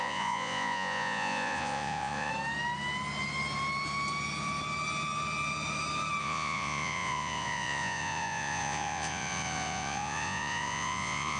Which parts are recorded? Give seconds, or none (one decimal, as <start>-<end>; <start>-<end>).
2.3-6.2